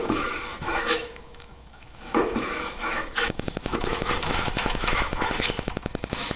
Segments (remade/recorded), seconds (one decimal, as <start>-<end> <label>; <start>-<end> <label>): 0.0-6.4 remade